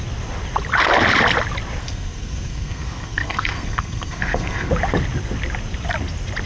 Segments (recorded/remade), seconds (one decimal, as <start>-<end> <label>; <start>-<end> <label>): 0.0-1.8 recorded; 1.8-4.7 remade; 4.7-6.5 recorded